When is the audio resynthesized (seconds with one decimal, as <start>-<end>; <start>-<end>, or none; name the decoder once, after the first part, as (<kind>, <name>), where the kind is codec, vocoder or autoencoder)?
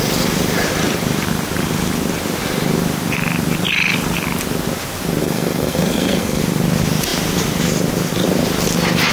5.2-6.4 (codec, SNAC)